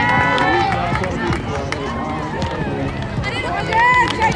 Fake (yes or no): no